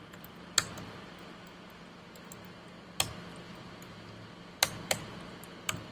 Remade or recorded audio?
recorded